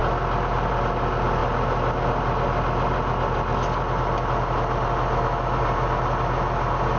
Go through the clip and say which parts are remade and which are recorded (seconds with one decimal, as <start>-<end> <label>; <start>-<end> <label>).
0.0-7.0 recorded